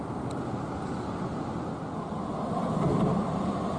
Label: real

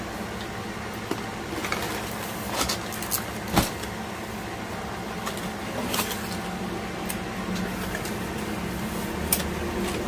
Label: real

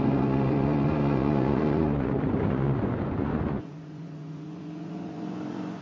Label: fake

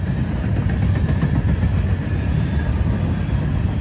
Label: real